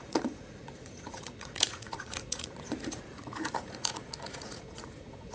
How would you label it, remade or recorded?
remade